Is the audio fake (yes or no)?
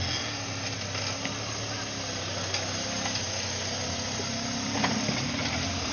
no